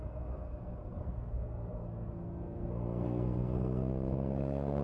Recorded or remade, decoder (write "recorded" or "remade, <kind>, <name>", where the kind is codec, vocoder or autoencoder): remade, codec, SNAC